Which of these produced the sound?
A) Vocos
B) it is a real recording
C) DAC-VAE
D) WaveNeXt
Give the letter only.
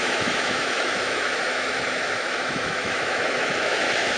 C